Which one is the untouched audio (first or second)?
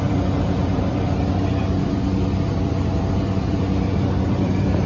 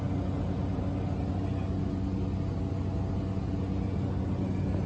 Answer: second